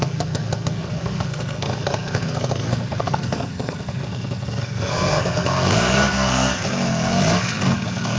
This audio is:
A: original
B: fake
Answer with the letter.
B